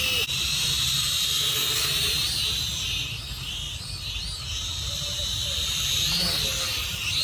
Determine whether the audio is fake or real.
real